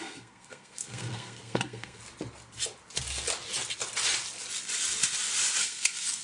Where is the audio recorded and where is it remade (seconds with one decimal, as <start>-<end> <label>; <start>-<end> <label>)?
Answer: 0.0-2.0 remade; 2.0-5.6 recorded; 5.6-6.2 remade